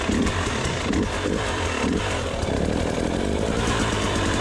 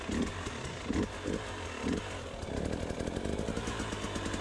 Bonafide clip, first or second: second